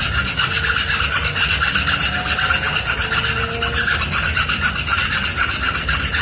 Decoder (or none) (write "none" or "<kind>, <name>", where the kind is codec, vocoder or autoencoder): none